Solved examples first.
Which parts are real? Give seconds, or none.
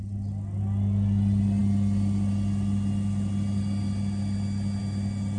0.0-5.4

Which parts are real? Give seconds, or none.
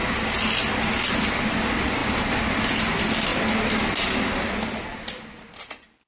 0.0-6.1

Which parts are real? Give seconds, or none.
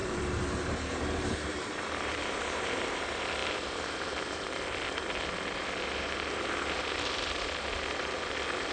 3.0-8.7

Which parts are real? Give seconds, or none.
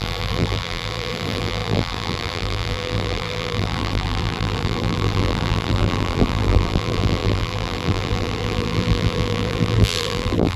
none